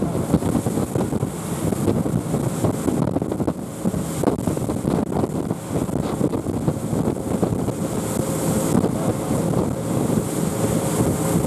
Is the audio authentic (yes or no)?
yes